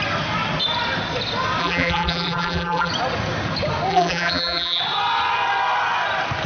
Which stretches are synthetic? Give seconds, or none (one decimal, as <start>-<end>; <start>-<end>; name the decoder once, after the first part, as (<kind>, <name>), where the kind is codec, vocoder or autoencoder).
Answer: 1.6-2.9 (vocoder, BigVGAN v2); 3.9-4.8